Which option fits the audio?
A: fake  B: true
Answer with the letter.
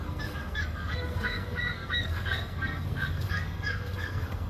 A